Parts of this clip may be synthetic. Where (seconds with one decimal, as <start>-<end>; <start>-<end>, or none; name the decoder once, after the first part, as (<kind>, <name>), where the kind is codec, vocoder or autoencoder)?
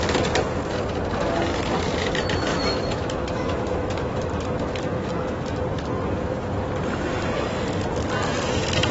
2.5-5.6 (autoencoder, DAC-VAE)